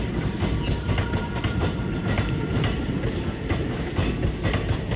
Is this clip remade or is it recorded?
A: recorded